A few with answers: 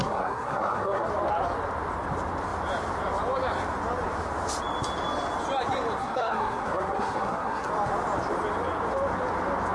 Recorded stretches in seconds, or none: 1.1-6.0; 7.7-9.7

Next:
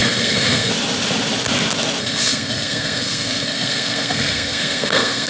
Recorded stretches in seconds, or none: 0.7-2.0

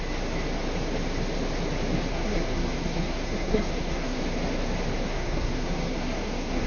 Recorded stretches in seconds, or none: 0.0-2.1; 4.2-5.0

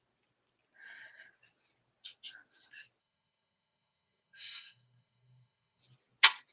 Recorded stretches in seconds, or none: 0.0-3.0; 5.8-6.5